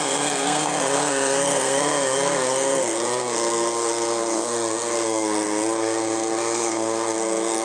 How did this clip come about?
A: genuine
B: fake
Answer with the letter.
B